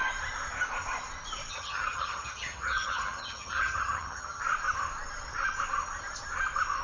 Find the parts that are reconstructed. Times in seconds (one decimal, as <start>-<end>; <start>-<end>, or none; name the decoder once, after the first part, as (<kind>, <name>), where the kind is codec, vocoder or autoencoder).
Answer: 1.5-4.4 (vocoder, HiFi-GAN)